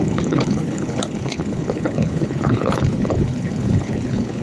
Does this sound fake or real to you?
fake